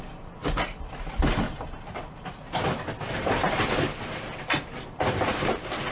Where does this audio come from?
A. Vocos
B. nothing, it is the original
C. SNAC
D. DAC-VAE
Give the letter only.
B